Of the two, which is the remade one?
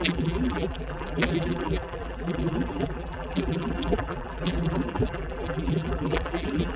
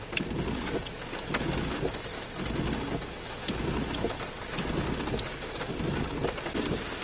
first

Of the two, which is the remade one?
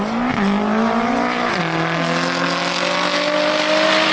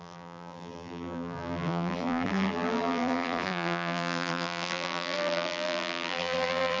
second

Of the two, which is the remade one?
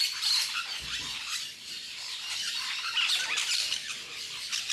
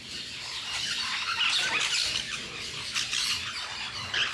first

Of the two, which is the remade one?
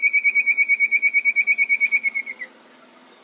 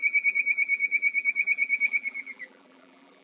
second